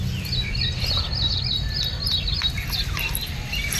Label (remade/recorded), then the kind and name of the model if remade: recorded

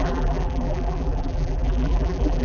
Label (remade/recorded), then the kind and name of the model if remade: remade, vocoder, BigVGAN v2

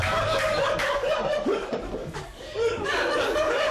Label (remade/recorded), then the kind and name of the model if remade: remade, codec, DAC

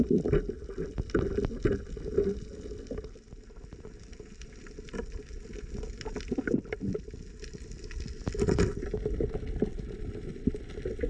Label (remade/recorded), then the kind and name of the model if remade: recorded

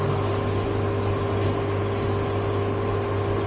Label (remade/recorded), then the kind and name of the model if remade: recorded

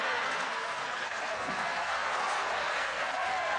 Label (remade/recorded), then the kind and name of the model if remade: remade, codec, SNAC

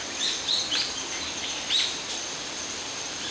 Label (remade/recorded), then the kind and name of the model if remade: recorded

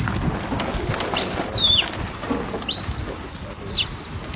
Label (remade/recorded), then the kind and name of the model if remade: recorded